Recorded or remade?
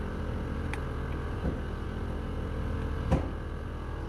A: recorded